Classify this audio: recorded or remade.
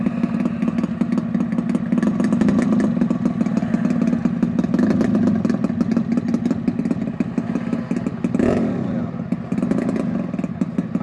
recorded